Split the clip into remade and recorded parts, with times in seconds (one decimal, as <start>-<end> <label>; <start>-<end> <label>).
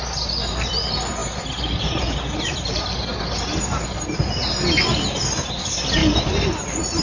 0.0-7.0 recorded